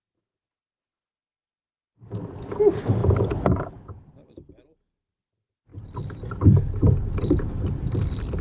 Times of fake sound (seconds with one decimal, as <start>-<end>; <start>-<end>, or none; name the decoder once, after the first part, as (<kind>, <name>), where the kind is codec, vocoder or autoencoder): 3.0-3.6 (vocoder, BigVGAN v2)